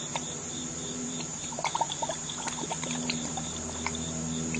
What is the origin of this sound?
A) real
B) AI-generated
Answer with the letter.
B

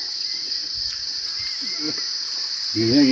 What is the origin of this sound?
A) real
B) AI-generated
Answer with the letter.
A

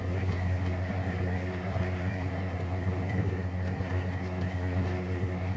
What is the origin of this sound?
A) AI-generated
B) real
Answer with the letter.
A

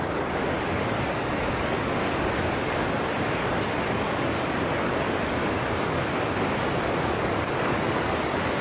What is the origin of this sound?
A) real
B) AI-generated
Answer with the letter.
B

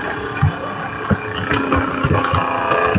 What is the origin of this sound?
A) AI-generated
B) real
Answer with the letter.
B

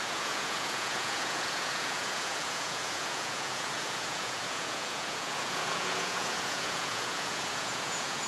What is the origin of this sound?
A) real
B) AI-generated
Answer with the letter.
B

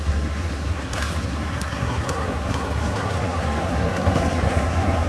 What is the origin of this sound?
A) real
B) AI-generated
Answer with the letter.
B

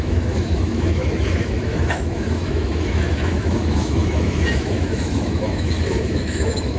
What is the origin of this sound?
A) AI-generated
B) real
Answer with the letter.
A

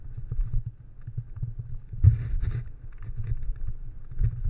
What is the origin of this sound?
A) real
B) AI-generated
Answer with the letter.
A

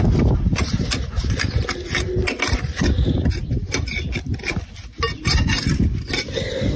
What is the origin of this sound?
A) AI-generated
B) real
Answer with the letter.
B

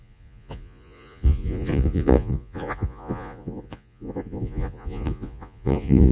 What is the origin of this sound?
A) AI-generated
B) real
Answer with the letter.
A